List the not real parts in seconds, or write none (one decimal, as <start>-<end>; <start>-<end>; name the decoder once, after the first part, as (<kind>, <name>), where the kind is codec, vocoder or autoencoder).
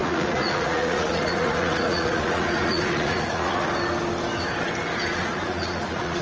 0.0-3.7 (vocoder, Vocos); 5.1-6.2